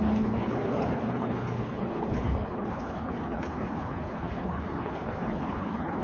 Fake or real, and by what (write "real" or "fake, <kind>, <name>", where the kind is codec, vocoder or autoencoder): fake, codec, HILCodec